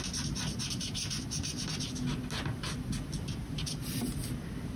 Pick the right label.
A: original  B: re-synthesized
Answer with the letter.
A